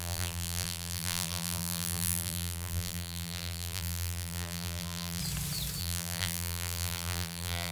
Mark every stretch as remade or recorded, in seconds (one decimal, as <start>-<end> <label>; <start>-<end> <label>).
0.0-5.2 remade; 5.2-5.8 recorded; 5.8-7.7 remade